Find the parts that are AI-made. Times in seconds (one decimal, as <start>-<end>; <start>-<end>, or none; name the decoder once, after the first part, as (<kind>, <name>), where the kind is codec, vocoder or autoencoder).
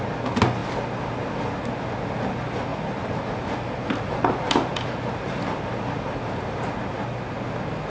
2.7-6.4 (vocoder, BigVGAN v2)